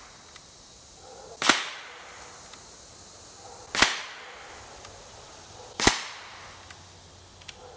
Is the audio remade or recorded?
recorded